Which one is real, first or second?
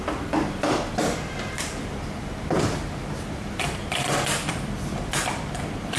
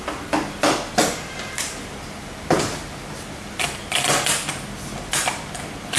second